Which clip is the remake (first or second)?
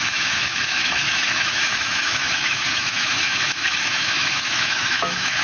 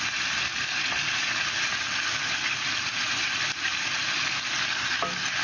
first